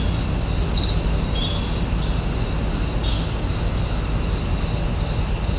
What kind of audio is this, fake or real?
real